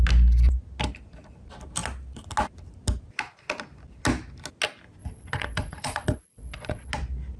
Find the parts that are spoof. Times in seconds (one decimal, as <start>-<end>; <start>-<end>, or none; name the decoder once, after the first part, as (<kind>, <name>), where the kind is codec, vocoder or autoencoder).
5.0-6.9 (vocoder, Vocos)